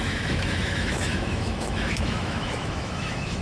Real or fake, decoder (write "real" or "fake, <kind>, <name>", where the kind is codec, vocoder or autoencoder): fake, autoencoder, DAC-VAE